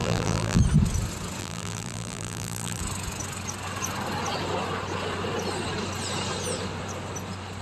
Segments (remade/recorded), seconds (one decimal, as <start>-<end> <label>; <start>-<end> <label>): 0.0-0.6 remade; 0.6-1.4 recorded; 1.4-2.8 remade; 2.8-7.6 recorded